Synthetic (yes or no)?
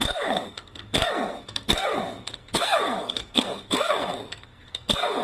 yes